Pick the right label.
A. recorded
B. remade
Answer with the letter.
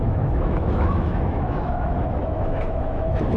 B